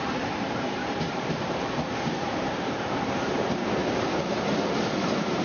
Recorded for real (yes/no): no